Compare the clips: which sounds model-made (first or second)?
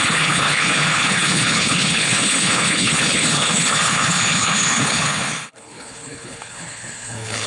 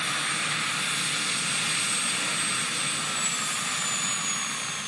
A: first